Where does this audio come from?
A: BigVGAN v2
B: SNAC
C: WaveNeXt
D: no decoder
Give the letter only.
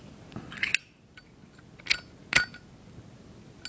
D